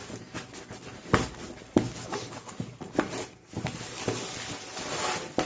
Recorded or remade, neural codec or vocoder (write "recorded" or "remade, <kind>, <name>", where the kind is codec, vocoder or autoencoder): recorded